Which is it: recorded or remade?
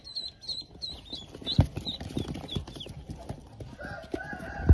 recorded